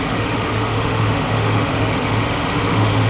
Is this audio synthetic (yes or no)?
yes